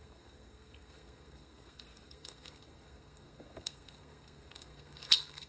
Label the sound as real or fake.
fake